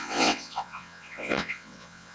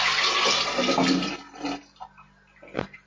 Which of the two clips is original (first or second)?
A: second